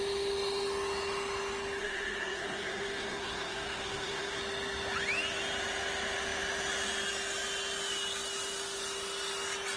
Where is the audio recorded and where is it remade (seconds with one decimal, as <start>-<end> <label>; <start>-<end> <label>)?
0.0-1.8 recorded; 1.8-4.4 remade; 4.4-9.8 recorded